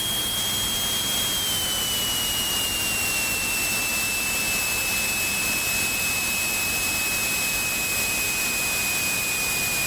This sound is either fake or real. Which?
real